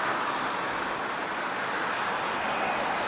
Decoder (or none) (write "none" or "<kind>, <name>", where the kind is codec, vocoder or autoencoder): none